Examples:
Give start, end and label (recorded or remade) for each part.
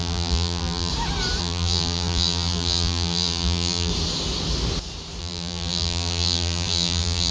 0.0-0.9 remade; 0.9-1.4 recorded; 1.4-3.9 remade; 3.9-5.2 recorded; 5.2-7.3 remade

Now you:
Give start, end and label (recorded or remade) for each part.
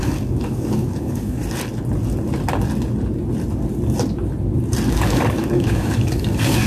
0.0-1.4 remade; 1.4-4.9 recorded; 4.9-6.7 remade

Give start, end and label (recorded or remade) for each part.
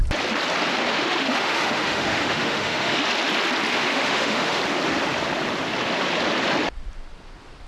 0.0-0.9 recorded; 0.9-3.0 remade; 3.0-3.7 recorded; 3.7-4.6 remade; 4.6-7.7 recorded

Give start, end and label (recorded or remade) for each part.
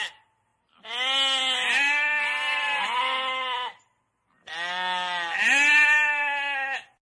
0.0-7.1 recorded